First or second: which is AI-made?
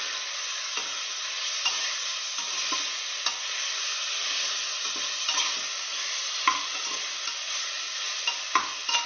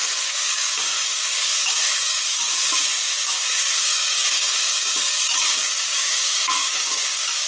second